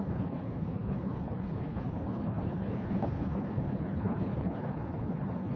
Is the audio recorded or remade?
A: remade